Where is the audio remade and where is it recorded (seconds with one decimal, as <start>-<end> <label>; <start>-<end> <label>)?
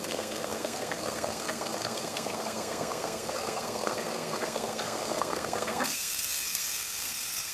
0.0-7.5 remade